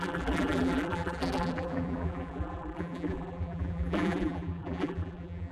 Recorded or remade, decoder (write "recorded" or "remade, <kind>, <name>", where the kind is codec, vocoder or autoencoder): remade, vocoder, BigVGAN v2